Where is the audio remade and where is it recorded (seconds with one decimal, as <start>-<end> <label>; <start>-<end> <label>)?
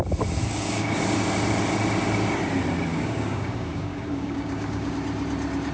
0.0-0.4 recorded; 0.4-1.0 remade; 1.0-2.9 recorded; 2.9-4.9 remade; 4.9-5.7 recorded